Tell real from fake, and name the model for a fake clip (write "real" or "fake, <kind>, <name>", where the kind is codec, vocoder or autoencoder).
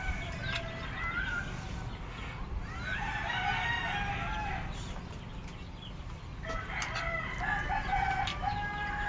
real